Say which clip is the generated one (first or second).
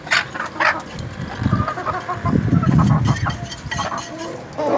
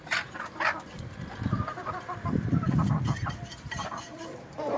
second